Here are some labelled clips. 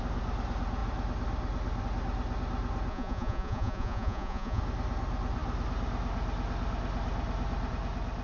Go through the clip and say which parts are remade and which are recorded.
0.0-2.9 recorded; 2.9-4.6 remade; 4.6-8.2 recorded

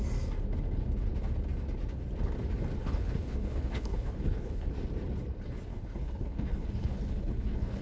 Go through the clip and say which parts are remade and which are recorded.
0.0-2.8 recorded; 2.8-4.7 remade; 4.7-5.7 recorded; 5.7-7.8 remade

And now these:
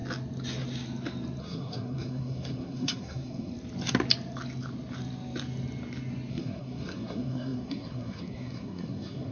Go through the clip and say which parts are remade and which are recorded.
0.0-1.4 recorded; 1.4-3.5 remade; 3.5-6.3 recorded; 6.3-9.3 remade

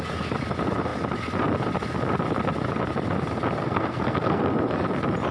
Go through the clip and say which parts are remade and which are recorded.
0.0-3.6 recorded; 3.6-4.4 remade; 4.4-5.3 recorded

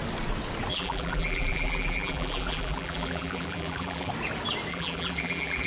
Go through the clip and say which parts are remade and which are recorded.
0.0-0.7 recorded; 0.7-4.1 remade; 4.1-4.7 recorded; 4.7-5.7 remade

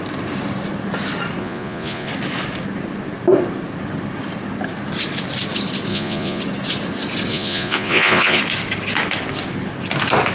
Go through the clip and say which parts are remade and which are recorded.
0.0-1.4 recorded; 1.4-2.1 remade; 2.1-5.9 recorded; 5.9-6.4 remade; 6.4-7.3 recorded; 7.3-8.4 remade; 8.4-10.3 recorded